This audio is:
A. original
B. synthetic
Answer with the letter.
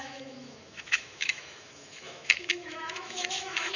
B